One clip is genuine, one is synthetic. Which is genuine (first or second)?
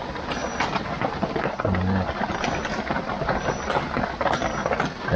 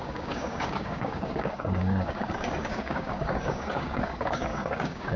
first